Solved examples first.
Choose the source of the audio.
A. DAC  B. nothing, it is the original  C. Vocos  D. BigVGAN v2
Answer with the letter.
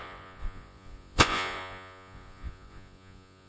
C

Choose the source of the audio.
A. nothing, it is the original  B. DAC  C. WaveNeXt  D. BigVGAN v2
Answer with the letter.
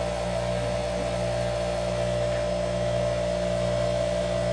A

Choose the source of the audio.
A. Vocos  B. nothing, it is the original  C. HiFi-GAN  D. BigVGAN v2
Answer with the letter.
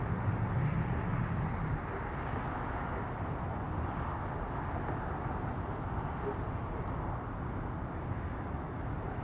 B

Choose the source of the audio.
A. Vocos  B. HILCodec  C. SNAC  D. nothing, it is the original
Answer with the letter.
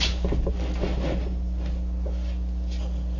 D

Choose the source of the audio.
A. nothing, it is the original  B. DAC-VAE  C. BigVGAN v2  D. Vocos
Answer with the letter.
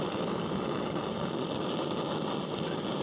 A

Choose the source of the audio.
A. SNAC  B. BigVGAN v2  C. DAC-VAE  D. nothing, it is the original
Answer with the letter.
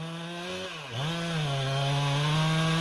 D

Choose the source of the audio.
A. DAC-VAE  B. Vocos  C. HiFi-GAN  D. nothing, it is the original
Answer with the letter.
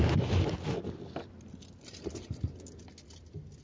D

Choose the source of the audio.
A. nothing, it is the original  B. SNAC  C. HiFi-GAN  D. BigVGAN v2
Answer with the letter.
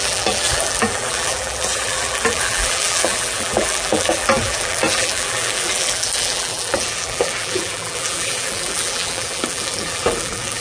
D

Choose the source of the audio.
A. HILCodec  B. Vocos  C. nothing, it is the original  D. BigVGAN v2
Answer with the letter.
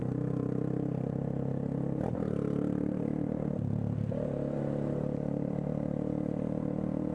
D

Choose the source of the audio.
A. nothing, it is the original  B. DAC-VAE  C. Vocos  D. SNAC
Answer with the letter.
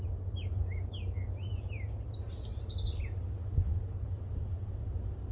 A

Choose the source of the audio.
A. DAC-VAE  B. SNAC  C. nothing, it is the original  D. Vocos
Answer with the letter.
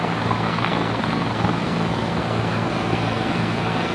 B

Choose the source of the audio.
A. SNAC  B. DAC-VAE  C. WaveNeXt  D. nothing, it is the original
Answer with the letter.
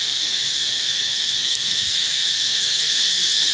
A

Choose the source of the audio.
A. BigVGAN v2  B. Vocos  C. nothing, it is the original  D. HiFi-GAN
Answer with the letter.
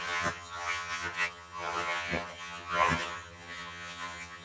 D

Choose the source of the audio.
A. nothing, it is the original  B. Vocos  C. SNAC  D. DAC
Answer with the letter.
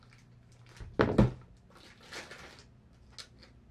A